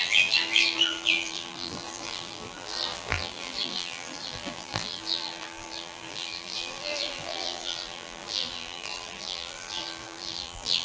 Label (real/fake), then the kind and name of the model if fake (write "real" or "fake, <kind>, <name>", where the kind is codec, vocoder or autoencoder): fake, vocoder, BigVGAN v2